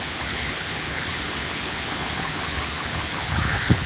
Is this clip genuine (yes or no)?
no